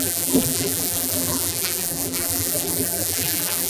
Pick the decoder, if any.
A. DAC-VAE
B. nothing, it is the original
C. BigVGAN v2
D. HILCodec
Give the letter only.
C